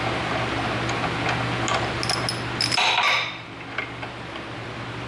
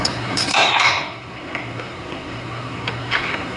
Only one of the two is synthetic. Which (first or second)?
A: second